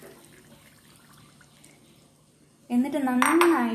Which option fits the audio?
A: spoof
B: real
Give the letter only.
B